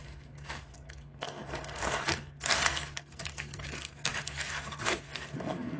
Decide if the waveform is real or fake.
fake